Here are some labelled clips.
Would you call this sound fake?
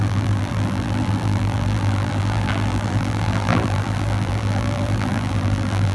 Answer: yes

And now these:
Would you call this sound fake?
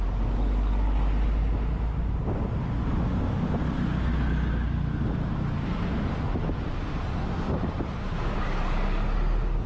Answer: no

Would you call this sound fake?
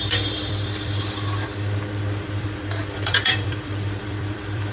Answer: yes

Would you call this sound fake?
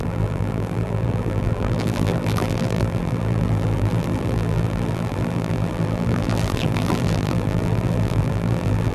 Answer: yes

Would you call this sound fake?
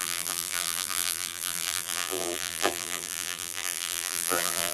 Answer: yes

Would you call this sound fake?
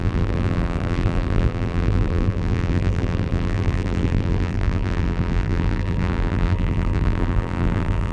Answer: yes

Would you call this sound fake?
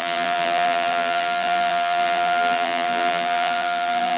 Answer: yes